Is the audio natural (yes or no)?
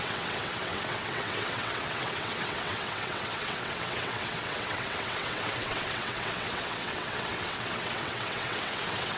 no